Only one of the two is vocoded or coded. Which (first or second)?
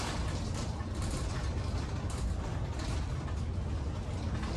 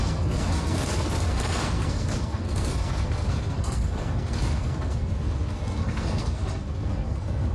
second